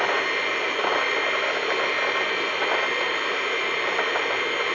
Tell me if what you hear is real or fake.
real